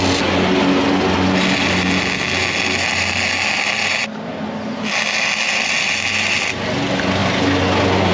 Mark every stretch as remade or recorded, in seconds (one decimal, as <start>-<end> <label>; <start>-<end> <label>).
0.0-8.1 recorded